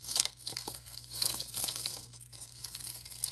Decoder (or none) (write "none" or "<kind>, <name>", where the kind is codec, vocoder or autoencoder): codec, SNAC